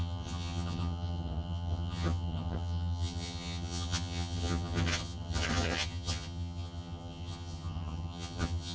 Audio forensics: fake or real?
fake